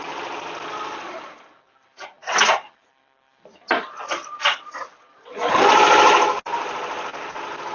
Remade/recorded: recorded